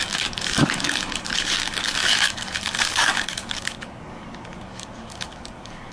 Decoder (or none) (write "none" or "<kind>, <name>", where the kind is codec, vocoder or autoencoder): codec, DAC